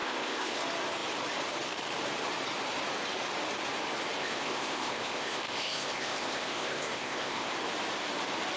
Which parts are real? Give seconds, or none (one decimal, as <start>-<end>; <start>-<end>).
0.6-4.2; 7.5-8.6